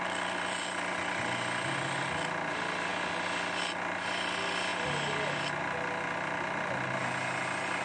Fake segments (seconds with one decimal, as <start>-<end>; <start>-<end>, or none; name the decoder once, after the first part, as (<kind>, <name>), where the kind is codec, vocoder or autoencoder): none